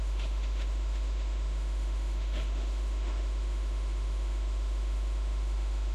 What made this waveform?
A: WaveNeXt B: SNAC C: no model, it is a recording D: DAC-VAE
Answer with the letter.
D